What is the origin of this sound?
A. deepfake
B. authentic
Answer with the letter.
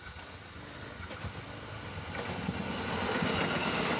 B